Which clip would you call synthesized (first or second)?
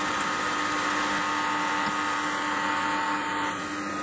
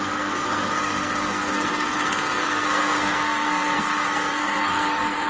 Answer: second